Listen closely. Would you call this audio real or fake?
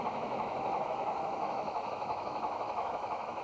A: fake